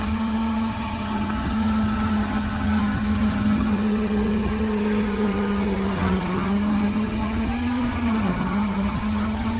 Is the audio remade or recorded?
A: remade